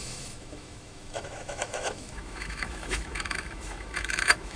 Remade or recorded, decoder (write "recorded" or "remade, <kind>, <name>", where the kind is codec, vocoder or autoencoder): remade, autoencoder, DAC-VAE